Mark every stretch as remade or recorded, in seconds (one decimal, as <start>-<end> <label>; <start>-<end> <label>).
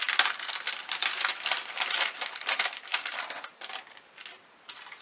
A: 0.0-5.0 recorded